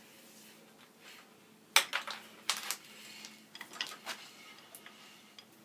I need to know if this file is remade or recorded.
recorded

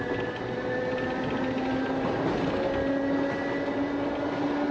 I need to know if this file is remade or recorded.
recorded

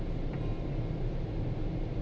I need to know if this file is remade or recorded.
recorded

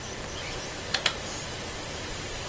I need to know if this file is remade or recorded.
remade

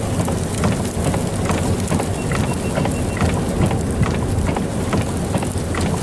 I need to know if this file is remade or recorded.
recorded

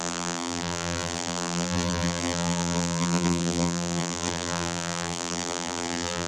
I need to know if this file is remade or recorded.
remade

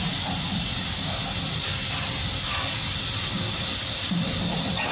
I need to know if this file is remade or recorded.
recorded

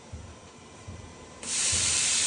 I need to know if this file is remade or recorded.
remade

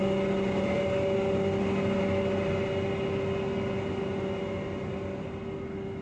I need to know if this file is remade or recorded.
recorded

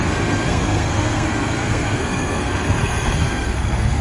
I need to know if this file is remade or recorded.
remade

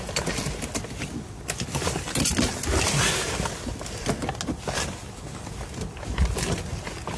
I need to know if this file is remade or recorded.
recorded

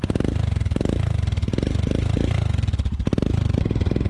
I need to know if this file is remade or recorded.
recorded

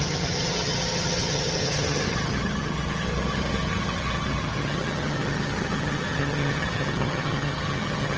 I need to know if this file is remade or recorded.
remade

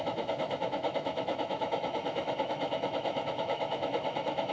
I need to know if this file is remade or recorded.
remade